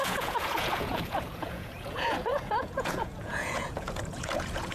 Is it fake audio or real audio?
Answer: fake